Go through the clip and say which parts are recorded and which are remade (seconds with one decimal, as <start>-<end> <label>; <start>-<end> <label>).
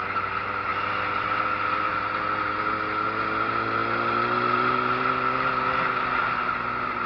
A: 0.0-7.1 recorded